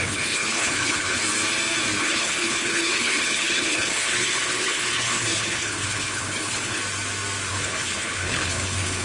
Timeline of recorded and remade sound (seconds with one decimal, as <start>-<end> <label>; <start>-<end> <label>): 0.0-1.2 remade; 1.2-2.0 recorded; 2.0-6.8 remade; 6.8-7.5 recorded; 7.5-9.0 remade